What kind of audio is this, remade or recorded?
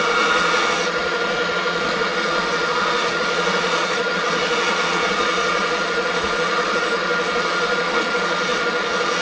remade